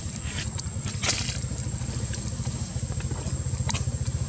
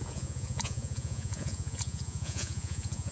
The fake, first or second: second